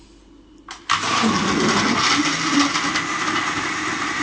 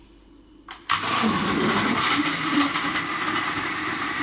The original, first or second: first